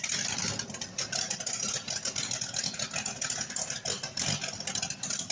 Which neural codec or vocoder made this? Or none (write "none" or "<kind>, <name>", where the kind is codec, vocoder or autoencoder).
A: none